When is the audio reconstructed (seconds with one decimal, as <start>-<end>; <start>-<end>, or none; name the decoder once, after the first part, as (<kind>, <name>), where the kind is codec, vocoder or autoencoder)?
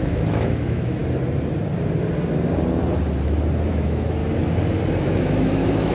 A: 0.0-1.0 (autoencoder, DAC-VAE); 3.7-4.2; 5.0-5.9